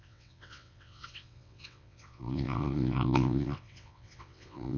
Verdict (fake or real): fake